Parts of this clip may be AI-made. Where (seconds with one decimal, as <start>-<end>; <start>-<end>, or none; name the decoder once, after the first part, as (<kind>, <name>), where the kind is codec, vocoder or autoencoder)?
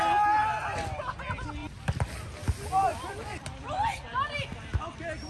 1.6-2.1 (vocoder, BigVGAN v2); 2.9-4.0